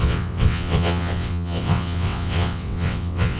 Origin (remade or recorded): remade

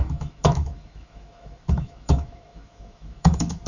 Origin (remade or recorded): remade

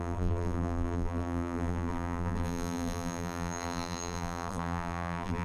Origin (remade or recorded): remade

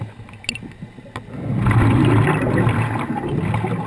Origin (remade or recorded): recorded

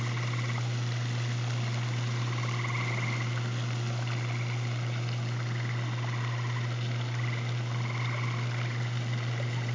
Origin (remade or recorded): recorded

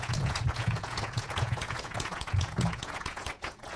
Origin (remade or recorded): remade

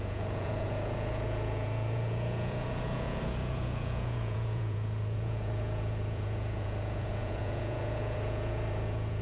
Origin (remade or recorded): remade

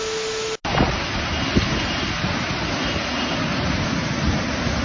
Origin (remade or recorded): recorded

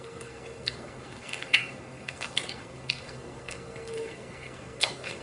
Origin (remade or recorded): remade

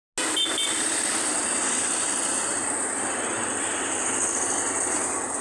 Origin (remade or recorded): recorded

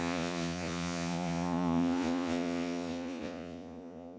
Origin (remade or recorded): remade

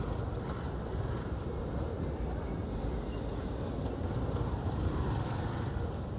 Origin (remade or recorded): recorded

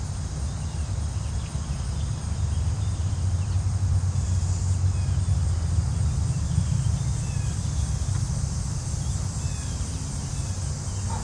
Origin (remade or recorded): recorded